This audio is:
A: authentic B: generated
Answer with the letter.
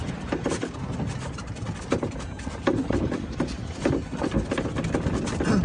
A